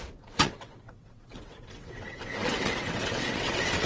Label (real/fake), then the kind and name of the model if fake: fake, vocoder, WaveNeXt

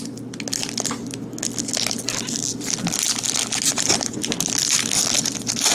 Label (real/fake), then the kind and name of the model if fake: real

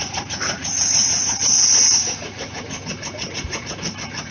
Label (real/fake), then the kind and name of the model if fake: fake, vocoder, Vocos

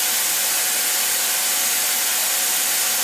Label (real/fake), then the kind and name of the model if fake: real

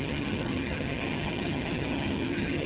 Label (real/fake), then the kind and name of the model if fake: fake, vocoder, HiFi-GAN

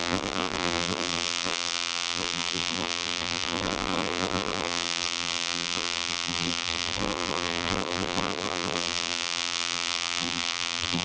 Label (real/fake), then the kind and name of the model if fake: fake, vocoder, BigVGAN v2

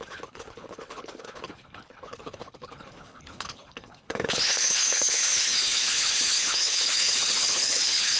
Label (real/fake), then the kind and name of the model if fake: fake, codec, HILCodec